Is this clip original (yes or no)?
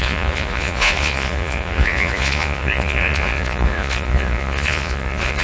no